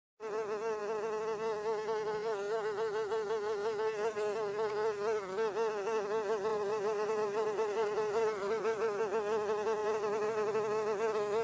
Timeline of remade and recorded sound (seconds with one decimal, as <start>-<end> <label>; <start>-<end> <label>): 0.0-6.5 recorded; 6.5-9.0 remade; 9.0-9.8 recorded; 9.8-10.5 remade; 10.5-11.4 recorded